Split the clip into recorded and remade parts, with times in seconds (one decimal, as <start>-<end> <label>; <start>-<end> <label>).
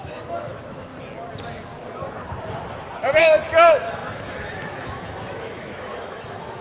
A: 0.0-0.9 remade; 0.9-3.2 recorded; 3.2-6.6 remade